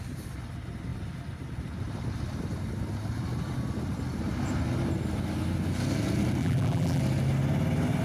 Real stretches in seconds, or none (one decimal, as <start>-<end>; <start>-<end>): 0.0-6.4; 7.0-8.0